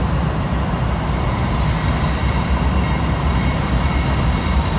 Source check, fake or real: real